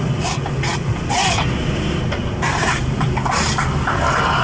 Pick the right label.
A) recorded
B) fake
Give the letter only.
A